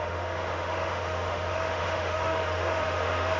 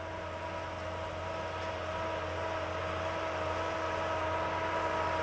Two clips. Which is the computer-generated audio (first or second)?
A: first